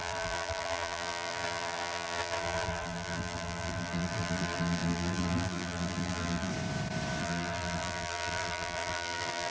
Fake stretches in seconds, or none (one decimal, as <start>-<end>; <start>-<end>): 0.0-6.5; 7.2-9.5